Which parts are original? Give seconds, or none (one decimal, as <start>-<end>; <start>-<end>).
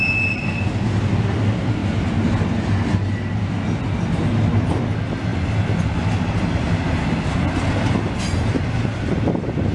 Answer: 0.0-9.7